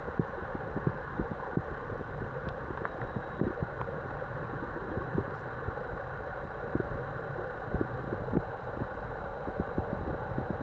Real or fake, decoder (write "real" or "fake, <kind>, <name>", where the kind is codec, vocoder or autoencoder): real